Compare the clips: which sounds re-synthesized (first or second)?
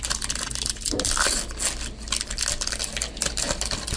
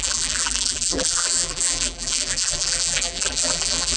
second